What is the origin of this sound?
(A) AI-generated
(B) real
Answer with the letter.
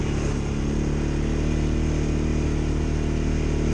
B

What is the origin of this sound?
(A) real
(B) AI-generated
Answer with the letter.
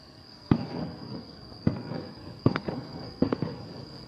B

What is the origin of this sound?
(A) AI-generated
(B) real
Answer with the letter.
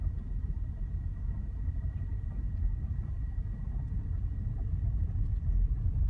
B